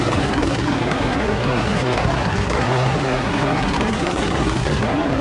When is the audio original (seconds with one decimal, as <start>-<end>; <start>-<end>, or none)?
none